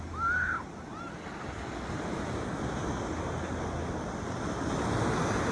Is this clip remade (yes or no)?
no